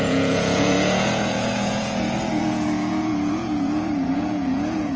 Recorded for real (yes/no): no